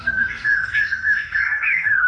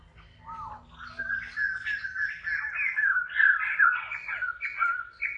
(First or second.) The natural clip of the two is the second